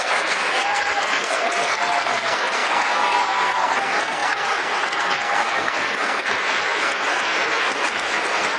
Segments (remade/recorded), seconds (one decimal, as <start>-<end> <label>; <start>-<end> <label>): 0.0-8.6 remade